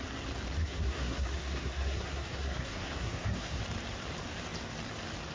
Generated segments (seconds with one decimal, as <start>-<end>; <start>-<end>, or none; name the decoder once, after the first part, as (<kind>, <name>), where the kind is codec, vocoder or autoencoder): 0.6-3.6 (codec, SNAC)